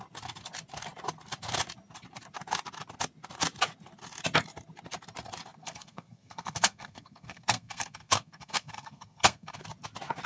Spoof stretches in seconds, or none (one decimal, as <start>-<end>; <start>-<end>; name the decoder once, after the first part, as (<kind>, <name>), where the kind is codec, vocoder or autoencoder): 5.6-9.6 (codec, SNAC)